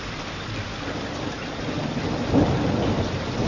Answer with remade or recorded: recorded